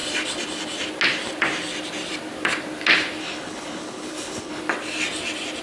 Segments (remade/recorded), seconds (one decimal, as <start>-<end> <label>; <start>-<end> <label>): 0.0-3.2 recorded; 3.2-4.6 remade; 4.6-5.6 recorded